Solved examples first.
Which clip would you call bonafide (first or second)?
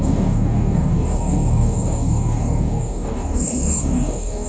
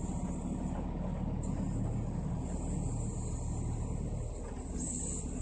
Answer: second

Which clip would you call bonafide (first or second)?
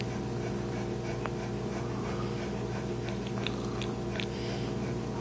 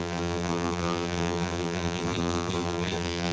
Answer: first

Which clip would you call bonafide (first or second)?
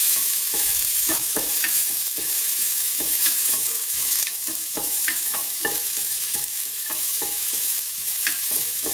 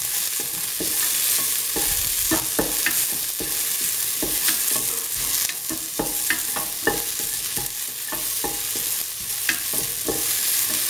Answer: second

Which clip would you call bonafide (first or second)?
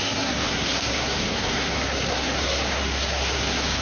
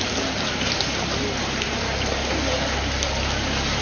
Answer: second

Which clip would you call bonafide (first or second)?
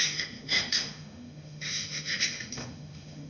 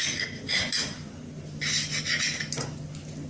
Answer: second